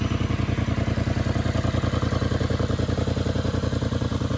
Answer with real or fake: real